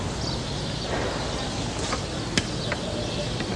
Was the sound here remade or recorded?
recorded